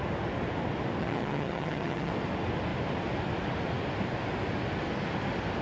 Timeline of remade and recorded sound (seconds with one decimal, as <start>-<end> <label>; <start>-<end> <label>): 0.0-1.0 recorded; 1.0-2.1 remade; 2.1-5.6 recorded